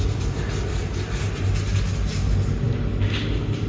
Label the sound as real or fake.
real